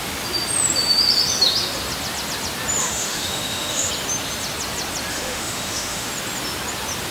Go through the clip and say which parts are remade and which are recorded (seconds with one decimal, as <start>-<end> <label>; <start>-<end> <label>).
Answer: 0.0-2.8 recorded; 2.8-3.9 remade; 3.9-5.1 recorded; 5.1-6.1 remade; 6.1-7.1 recorded